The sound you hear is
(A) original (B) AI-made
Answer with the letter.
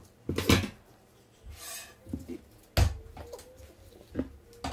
A